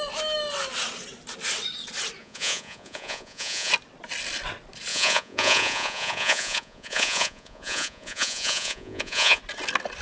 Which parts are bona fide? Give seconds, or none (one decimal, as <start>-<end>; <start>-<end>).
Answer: 0.0-2.2; 3.7-4.9; 9.4-10.0